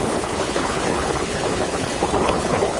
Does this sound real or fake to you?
fake